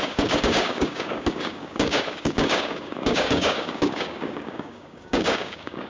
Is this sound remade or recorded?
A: remade